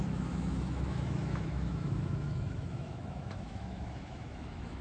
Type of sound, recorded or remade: remade